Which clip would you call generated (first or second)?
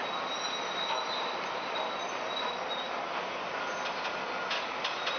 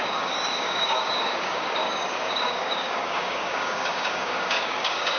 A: second